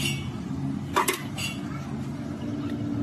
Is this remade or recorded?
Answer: recorded